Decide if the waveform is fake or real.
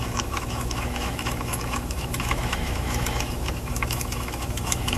fake